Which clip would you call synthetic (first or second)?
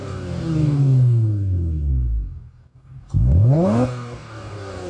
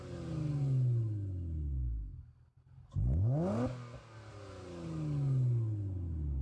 first